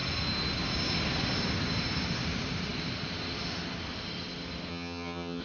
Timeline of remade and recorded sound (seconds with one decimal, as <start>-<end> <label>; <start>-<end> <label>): 0.0-4.7 recorded; 4.7-5.4 remade